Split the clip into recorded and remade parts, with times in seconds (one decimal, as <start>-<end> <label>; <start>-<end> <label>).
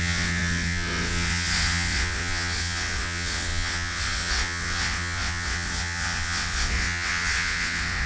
0.0-8.1 remade